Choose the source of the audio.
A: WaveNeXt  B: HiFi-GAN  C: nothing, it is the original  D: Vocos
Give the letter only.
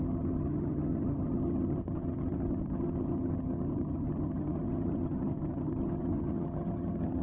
B